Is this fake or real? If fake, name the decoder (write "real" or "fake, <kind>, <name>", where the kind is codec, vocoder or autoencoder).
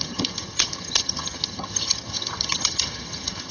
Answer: fake, vocoder, HiFi-GAN